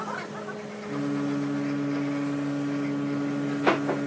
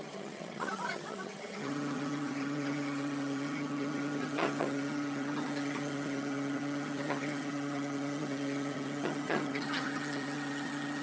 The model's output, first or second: second